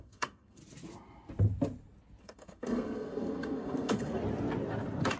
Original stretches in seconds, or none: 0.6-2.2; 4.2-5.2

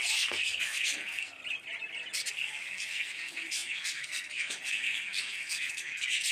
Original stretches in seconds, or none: 1.4-2.3

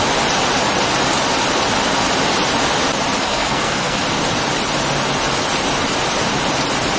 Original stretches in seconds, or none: 0.0-3.2; 4.0-7.0

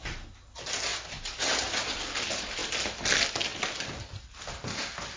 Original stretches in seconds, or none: 0.0-5.2